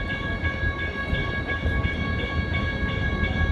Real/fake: real